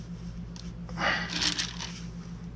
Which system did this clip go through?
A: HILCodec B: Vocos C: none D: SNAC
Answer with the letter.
C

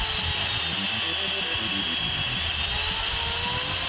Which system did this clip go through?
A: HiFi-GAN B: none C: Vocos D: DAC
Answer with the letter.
B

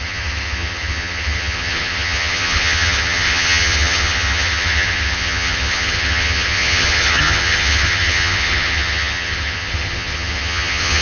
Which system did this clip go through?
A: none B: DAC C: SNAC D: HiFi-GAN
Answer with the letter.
D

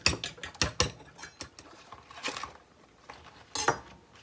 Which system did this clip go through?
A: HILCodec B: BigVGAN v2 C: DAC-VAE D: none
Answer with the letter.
D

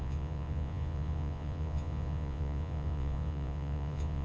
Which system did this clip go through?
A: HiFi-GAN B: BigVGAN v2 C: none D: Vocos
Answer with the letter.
D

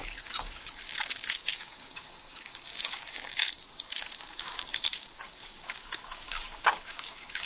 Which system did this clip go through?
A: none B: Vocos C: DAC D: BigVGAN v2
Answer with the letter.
C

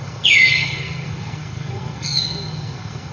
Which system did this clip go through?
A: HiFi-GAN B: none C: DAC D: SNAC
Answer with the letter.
D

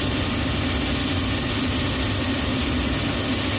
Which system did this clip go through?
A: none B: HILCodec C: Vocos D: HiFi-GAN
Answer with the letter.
A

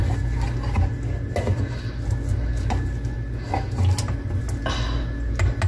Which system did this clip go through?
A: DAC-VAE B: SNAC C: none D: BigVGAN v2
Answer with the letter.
C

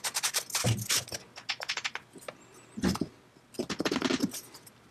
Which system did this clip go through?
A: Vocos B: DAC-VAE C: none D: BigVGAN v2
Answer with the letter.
C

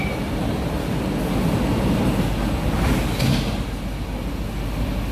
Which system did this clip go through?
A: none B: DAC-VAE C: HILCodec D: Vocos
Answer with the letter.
A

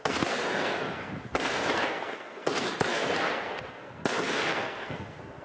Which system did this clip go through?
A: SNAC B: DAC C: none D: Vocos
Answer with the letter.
A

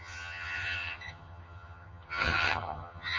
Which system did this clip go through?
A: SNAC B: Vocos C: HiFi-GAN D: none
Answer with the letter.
C